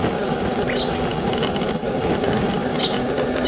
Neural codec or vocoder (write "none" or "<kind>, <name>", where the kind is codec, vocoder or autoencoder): none